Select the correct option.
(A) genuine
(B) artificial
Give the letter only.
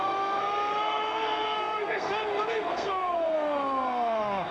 B